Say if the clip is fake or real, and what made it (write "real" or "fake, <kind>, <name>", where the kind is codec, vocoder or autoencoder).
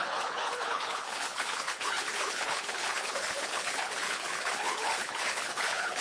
fake, codec, HILCodec